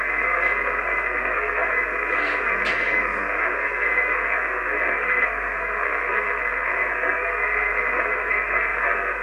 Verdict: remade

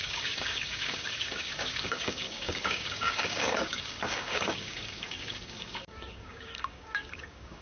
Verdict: remade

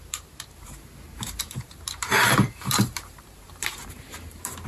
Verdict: remade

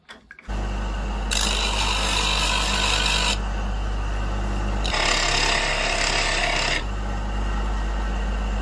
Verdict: recorded